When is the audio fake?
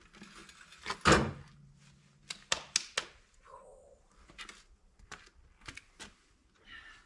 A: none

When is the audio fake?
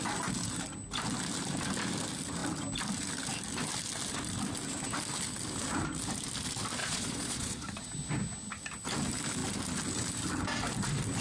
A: 6.8-7.8 (vocoder, Vocos)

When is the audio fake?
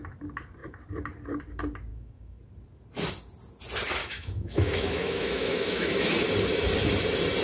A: 1.9-2.4 (autoencoder, DAC-VAE); 4.0-6.1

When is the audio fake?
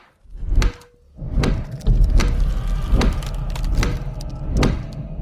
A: none